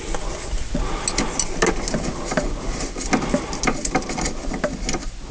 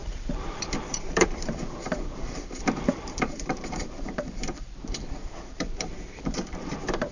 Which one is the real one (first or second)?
first